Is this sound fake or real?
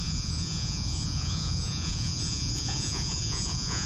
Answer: fake